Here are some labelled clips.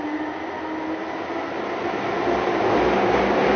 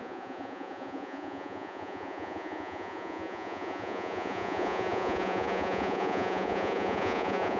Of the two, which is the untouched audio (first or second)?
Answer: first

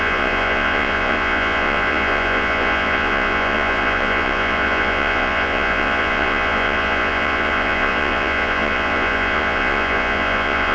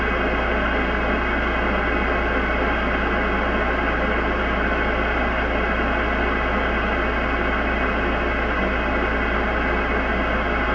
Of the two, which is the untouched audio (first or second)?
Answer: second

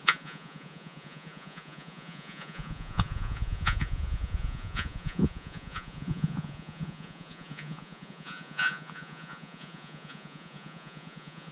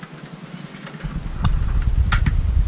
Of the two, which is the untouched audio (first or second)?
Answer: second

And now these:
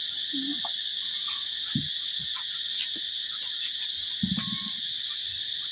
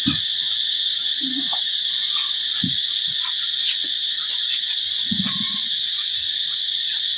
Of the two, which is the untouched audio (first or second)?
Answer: first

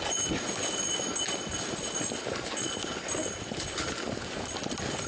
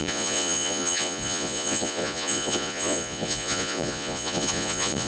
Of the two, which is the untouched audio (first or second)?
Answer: first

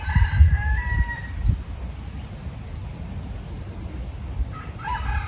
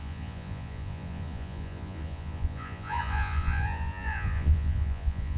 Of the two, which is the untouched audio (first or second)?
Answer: first